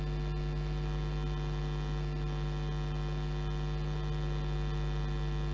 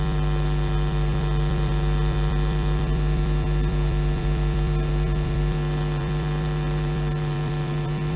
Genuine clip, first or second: first